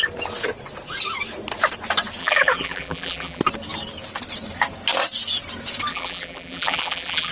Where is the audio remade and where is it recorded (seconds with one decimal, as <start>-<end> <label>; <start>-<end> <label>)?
0.0-2.2 recorded; 2.2-3.4 remade; 3.4-5.9 recorded; 5.9-7.3 remade